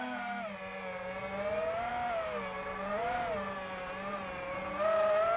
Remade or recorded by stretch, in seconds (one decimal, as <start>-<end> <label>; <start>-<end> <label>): 0.0-5.4 recorded